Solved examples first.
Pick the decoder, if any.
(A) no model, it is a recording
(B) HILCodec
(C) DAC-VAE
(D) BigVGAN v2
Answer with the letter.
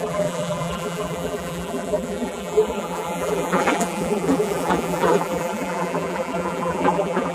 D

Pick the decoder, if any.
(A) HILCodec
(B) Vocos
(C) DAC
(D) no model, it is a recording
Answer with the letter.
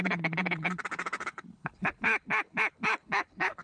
A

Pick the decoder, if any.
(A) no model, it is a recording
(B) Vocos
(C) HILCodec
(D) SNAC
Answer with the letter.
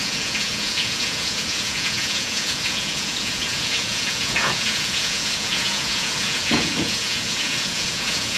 B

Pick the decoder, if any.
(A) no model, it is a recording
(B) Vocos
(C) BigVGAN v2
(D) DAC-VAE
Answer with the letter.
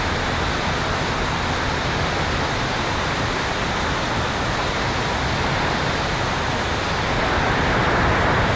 A